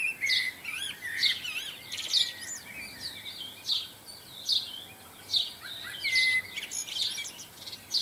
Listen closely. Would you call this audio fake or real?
real